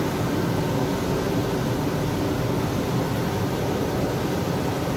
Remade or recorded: recorded